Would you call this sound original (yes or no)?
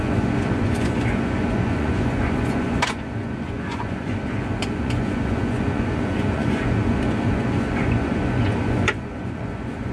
no